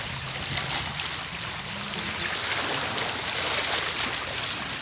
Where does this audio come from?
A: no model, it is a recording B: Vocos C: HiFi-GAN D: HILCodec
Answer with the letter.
A